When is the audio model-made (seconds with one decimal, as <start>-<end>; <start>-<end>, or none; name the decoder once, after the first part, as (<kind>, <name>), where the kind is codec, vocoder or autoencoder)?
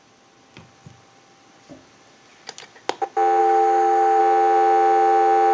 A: 3.4-4.2 (codec, SNAC)